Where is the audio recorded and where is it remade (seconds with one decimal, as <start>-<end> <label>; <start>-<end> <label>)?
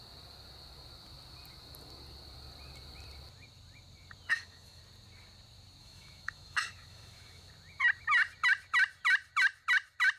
0.0-4.3 recorded; 4.3-4.8 remade; 4.8-5.8 recorded; 5.8-7.5 remade; 7.5-10.2 recorded